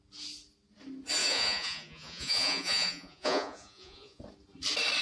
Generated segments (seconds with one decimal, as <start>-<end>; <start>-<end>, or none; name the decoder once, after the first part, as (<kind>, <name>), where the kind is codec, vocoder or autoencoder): 1.2-4.2 (vocoder, Vocos)